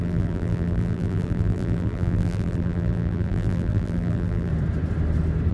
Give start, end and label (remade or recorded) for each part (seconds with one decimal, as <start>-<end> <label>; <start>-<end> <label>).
0.0-4.5 remade; 4.5-5.5 recorded